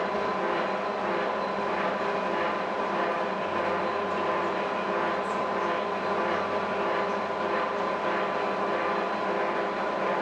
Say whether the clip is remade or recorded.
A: recorded